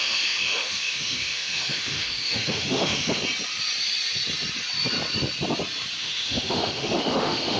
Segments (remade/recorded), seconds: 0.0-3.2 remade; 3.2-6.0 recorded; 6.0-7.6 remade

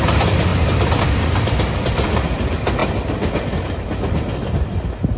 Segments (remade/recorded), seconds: 0.0-0.5 recorded; 0.5-1.0 remade; 1.0-5.2 recorded

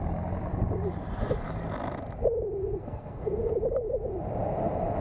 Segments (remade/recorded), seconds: 0.0-2.6 recorded; 2.6-3.5 remade; 3.5-5.0 recorded

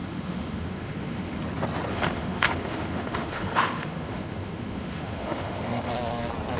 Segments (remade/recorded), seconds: 0.0-1.4 remade; 1.4-1.9 recorded; 1.9-5.9 remade; 5.9-6.6 recorded